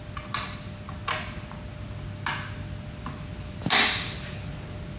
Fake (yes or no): no